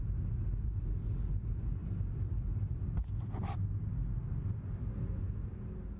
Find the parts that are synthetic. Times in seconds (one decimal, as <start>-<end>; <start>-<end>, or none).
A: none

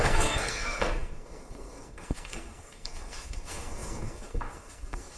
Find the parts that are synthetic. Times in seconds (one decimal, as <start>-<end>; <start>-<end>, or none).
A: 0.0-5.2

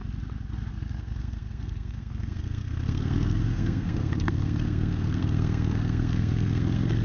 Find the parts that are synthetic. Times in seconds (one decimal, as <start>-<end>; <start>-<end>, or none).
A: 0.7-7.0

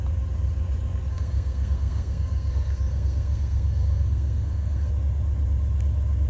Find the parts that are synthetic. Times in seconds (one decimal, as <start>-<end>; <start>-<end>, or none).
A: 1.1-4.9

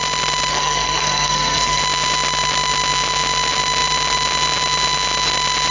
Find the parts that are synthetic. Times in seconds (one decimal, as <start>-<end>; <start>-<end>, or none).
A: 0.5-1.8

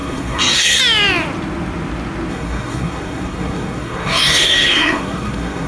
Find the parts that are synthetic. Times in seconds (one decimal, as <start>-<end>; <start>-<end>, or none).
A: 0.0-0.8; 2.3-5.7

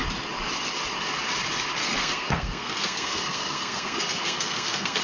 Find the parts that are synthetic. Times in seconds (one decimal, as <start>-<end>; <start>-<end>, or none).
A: 1.8-5.0

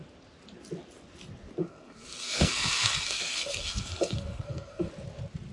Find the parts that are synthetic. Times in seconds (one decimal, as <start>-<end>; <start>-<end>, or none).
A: 1.6-4.9